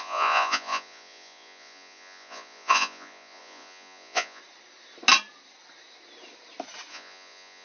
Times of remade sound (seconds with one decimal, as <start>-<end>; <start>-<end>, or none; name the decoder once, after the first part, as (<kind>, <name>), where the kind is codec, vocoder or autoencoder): 0.0-4.4 (vocoder, Vocos); 6.9-7.6